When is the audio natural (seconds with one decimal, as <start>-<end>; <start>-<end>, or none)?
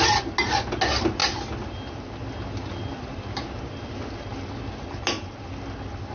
0.0-6.1